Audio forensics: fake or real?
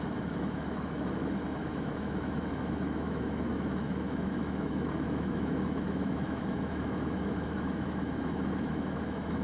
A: fake